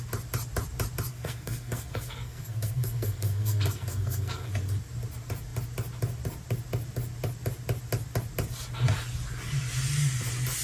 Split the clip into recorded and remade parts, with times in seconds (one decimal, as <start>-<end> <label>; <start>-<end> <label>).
0.0-1.1 recorded; 1.1-4.5 remade; 4.5-10.6 recorded